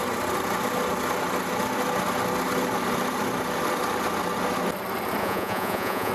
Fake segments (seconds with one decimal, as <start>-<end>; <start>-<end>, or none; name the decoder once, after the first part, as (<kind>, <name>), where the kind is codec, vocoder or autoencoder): 5.2-6.1 (vocoder, Vocos)